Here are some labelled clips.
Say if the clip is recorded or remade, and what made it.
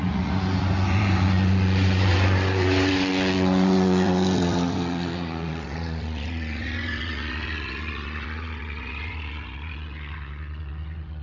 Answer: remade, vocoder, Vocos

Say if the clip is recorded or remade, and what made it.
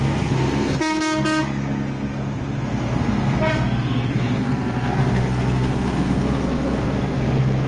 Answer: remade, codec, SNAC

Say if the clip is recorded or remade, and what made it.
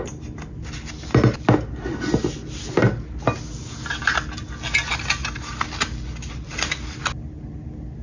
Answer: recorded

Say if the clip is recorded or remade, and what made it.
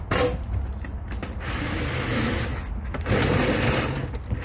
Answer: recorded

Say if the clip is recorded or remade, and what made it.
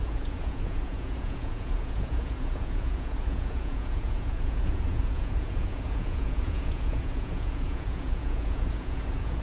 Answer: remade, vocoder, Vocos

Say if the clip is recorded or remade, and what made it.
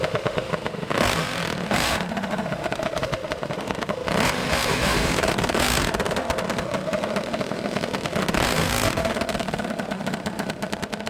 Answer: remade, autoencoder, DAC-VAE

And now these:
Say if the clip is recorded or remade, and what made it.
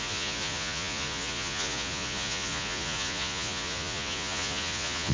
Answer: remade, vocoder, Vocos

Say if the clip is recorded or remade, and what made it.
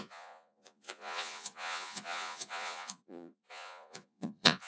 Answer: remade, vocoder, Vocos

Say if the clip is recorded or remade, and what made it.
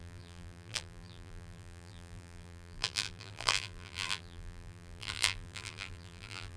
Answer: remade, vocoder, BigVGAN v2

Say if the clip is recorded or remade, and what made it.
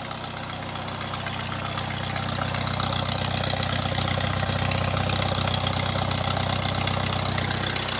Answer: recorded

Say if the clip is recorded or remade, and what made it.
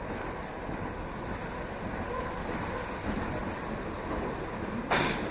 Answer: recorded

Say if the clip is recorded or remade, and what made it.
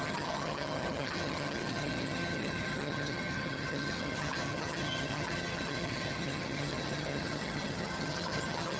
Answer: remade, vocoder, HiFi-GAN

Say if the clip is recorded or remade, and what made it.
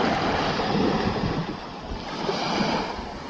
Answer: recorded